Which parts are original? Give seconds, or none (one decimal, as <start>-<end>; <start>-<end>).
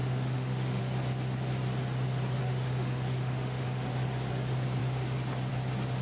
0.8-2.4; 3.9-6.0